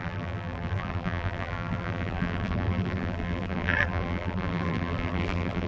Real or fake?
fake